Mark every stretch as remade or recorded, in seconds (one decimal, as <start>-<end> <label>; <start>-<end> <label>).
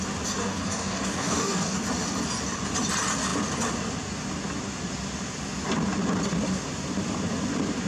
0.0-0.4 recorded; 0.4-1.8 remade; 1.8-7.9 recorded